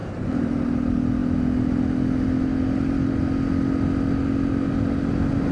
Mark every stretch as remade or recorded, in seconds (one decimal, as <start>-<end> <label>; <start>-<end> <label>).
0.0-0.5 remade; 0.5-5.5 recorded